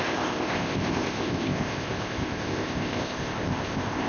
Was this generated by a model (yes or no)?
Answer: yes